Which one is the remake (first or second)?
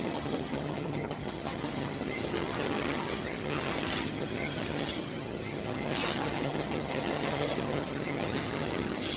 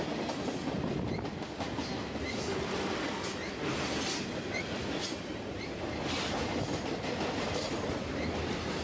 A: first